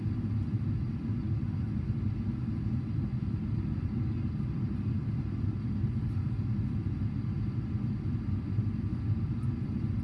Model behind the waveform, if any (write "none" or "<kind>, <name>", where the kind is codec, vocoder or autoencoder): none